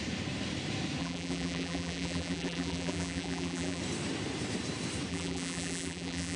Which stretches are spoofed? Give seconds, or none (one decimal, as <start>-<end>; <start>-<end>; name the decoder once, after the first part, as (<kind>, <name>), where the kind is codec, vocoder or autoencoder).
1.0-3.8 (vocoder, BigVGAN v2); 5.1-6.4